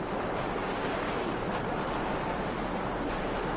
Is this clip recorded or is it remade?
recorded